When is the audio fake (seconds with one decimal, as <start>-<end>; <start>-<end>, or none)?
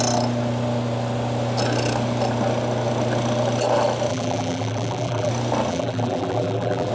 4.1-5.3; 5.7-6.9